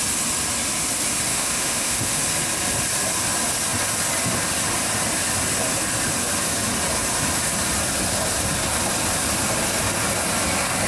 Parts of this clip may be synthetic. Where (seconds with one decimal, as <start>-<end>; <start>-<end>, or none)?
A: 1.3-2.2